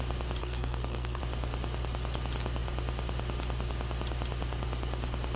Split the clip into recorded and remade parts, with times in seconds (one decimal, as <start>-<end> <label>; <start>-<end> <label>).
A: 0.0-0.4 recorded; 0.4-1.2 remade; 1.2-5.4 recorded